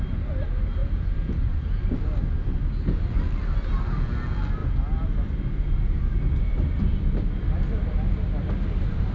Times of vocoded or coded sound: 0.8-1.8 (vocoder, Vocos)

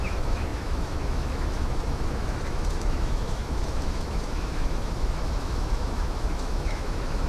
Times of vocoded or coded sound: 0.0-7.3 (autoencoder, DAC-VAE)

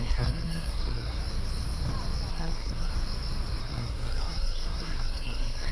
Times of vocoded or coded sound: 0.0-1.2 (codec, SNAC); 2.3-2.9; 3.6-5.7

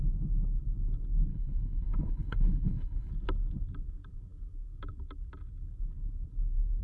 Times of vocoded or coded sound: 1.3-3.1 (codec, HILCodec)